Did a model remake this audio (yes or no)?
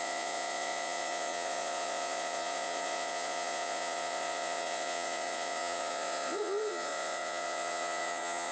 yes